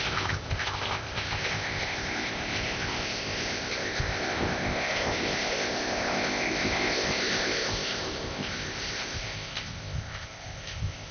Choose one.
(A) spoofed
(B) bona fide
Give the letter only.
A